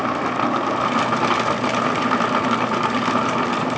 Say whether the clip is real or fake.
real